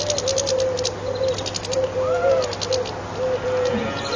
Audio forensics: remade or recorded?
recorded